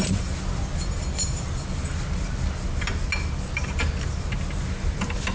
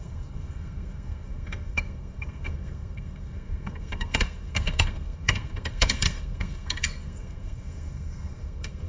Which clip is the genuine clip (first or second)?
first